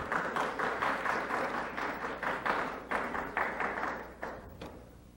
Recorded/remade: remade